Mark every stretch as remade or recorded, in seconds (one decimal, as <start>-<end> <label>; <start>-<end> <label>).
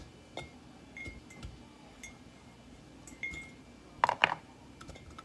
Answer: 0.0-4.2 recorded; 4.2-5.2 remade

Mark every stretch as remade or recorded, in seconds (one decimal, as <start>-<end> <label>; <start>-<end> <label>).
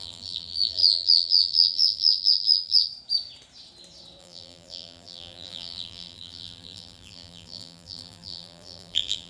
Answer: 0.0-2.9 remade; 2.9-4.2 recorded; 4.2-9.3 remade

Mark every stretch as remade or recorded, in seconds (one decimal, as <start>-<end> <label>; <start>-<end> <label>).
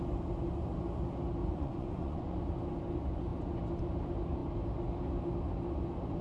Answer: 0.0-1.4 recorded; 1.4-2.5 remade; 2.5-6.2 recorded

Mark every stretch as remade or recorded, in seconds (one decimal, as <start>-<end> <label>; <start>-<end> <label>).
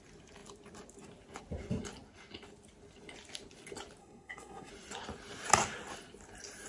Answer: 0.0-4.0 recorded; 4.0-4.7 remade; 4.7-6.7 recorded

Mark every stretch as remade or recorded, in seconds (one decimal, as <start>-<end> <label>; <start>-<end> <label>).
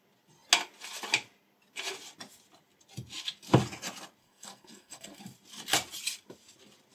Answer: 0.0-4.2 recorded; 4.2-5.2 remade; 5.2-6.9 recorded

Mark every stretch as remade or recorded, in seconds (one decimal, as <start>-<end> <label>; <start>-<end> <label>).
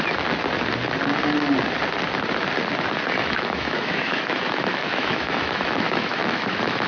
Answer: 0.0-3.2 recorded; 3.2-6.9 remade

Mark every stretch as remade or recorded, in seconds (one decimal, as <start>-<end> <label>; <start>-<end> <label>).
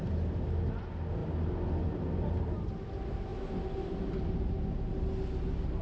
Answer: 0.0-5.8 recorded